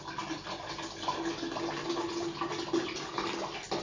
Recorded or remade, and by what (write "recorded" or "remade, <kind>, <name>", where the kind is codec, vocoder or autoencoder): recorded